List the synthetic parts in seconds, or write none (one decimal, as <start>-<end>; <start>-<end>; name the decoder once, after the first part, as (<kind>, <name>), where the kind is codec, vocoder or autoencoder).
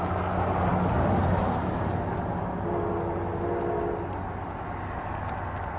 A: none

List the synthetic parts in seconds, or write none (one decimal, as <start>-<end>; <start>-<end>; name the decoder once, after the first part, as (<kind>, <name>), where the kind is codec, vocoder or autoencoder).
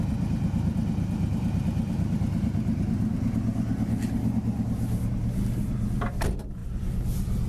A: none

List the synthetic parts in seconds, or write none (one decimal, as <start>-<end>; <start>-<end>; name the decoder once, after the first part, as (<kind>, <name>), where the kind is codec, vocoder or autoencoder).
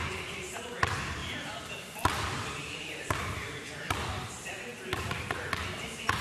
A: 1.2-4.3 (vocoder, BigVGAN v2)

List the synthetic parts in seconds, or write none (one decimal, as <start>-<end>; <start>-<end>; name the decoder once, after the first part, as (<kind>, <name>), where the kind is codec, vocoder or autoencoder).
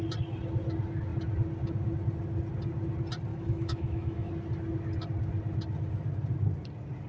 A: 3.3-4.3 (autoencoder, DAC-VAE)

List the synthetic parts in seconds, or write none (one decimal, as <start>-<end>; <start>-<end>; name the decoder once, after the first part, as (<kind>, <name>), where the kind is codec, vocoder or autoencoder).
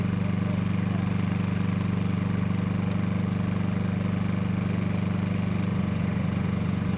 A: 5.7-7.0 (vocoder, Vocos)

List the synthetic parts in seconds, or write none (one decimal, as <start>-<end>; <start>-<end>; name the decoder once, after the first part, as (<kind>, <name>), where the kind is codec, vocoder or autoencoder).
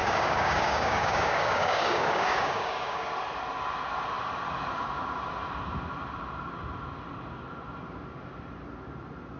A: 0.0-3.1 (codec, DAC)